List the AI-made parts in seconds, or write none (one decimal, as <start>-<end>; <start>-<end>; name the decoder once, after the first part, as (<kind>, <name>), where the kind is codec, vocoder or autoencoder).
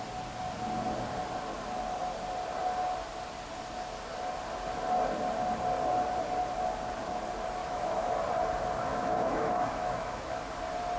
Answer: 7.6-8.1 (autoencoder, DAC-VAE); 8.9-10.4